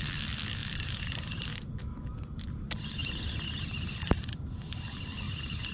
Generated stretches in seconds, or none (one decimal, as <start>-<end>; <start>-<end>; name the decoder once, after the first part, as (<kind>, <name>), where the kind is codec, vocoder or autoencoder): 0.6-1.7 (vocoder, BigVGAN v2); 3.0-5.3